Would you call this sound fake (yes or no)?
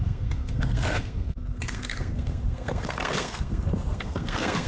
yes